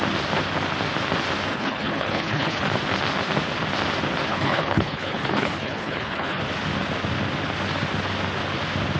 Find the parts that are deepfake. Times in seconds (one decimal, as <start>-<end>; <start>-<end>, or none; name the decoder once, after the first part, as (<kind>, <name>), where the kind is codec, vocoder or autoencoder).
1.5-2.6 (codec, HILCodec); 4.3-6.4